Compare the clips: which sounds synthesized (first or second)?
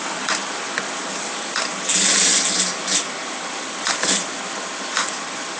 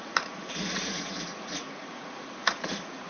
second